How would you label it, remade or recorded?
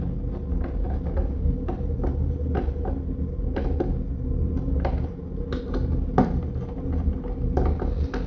recorded